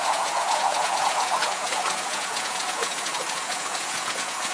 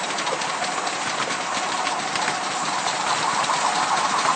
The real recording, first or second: second